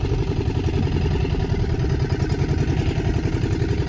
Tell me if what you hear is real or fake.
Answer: real